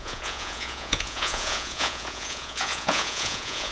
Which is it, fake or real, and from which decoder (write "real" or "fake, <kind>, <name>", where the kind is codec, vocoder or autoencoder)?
fake, vocoder, Vocos